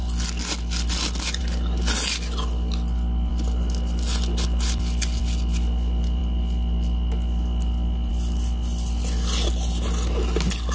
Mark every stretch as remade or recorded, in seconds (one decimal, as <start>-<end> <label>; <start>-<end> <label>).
0.0-10.7 recorded